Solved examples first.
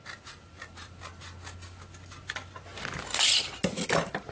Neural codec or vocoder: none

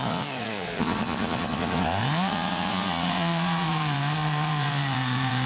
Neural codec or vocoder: vocoder, Vocos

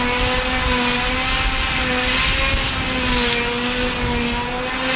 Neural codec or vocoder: none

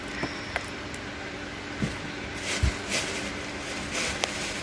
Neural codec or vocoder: none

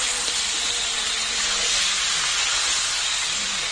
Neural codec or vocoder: none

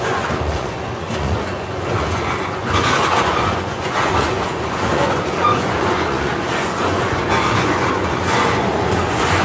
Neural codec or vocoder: vocoder, Vocos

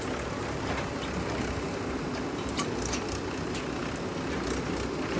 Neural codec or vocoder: none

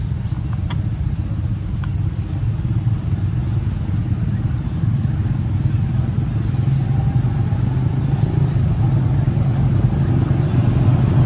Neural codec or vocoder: none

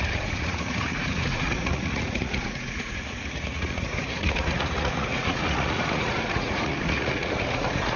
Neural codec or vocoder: vocoder, Vocos